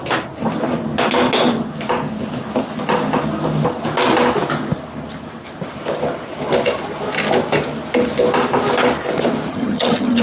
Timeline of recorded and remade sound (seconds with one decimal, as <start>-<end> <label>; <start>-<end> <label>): 0.0-9.5 recorded; 9.5-10.2 remade